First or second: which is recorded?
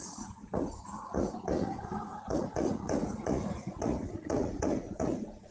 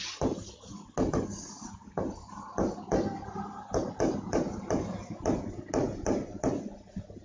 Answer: second